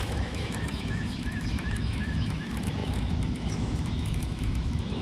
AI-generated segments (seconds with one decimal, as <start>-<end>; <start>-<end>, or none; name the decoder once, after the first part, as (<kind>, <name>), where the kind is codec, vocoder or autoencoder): 0.0-5.0 (autoencoder, DAC-VAE)